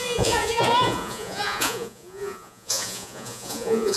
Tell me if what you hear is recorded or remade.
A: remade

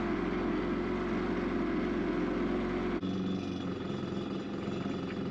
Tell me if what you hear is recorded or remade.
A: recorded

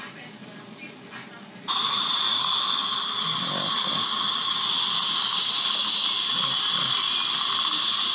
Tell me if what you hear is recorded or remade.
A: recorded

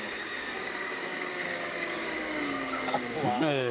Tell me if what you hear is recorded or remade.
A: remade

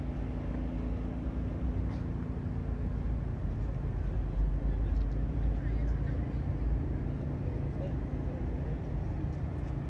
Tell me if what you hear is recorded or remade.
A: recorded